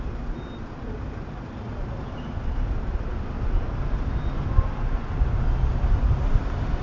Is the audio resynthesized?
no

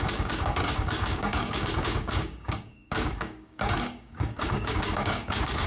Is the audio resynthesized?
yes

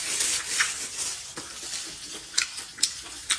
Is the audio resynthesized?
no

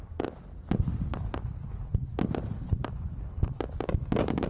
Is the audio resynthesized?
no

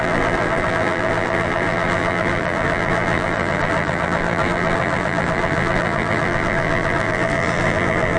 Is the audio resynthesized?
yes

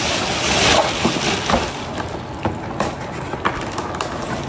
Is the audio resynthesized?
no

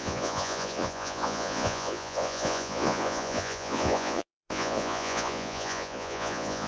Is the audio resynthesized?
yes